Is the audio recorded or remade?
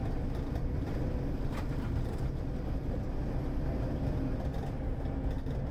recorded